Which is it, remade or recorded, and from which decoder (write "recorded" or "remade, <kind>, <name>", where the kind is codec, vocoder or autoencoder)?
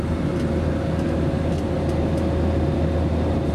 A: recorded